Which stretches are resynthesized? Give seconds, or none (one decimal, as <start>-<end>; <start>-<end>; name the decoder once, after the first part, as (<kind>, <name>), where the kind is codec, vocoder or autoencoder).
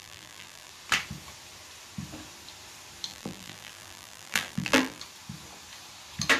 0.0-0.7 (vocoder, BigVGAN v2); 3.1-5.0